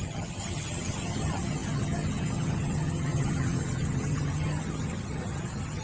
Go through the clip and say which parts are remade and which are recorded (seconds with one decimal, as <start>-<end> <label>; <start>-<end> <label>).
0.0-5.8 remade